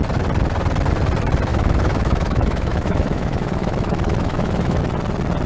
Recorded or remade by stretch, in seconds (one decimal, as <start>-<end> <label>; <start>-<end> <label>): 0.0-1.5 recorded; 1.5-4.8 remade; 4.8-5.5 recorded